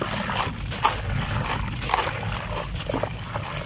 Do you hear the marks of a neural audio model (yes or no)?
no